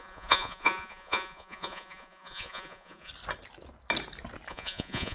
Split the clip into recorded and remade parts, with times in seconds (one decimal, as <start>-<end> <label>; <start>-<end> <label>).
0.0-3.1 remade; 3.1-4.5 recorded; 4.5-5.1 remade